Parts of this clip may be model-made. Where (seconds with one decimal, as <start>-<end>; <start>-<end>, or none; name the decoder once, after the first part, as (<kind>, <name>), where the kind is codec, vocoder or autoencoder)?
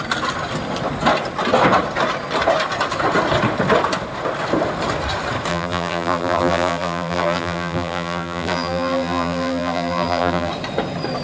5.5-10.5 (vocoder, BigVGAN v2)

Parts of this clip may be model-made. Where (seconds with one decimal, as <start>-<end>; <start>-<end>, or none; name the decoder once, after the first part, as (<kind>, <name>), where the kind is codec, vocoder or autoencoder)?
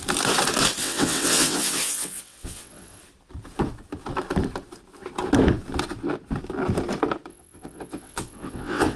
0.8-3.0 (vocoder, WaveNeXt); 7.3-9.0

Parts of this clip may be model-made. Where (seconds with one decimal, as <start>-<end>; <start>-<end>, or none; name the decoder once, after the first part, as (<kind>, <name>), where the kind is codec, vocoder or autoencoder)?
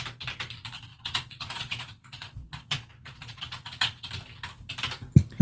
0.9-4.1 (vocoder, Vocos)